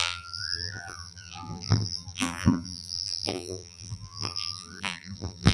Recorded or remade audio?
remade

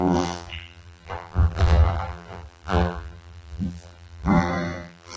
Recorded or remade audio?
remade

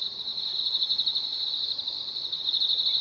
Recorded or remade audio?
recorded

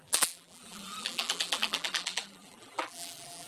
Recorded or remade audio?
remade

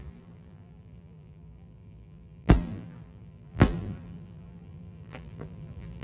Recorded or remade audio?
remade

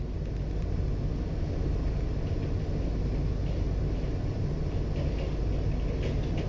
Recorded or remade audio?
recorded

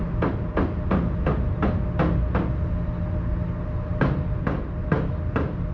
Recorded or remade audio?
recorded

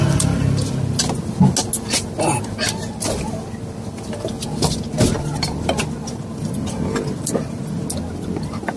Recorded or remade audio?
recorded